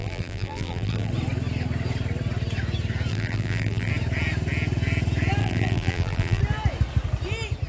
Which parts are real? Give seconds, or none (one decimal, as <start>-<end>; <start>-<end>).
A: 1.1-3.1; 3.9-5.4; 6.4-7.7